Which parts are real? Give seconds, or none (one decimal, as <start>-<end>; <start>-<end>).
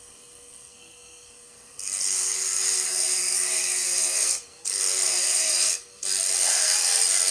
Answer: none